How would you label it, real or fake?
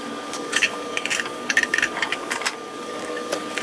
fake